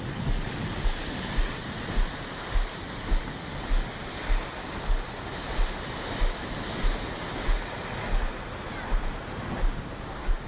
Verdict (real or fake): real